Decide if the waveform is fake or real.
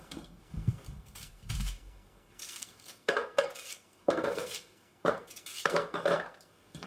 fake